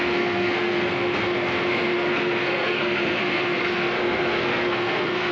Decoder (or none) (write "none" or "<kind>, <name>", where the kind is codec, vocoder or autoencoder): codec, SNAC